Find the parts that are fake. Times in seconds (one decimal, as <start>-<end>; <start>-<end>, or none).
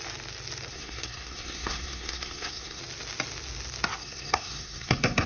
0.7-2.8; 4.0-5.3